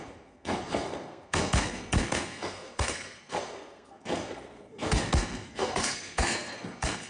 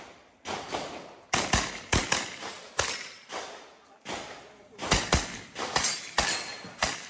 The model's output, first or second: first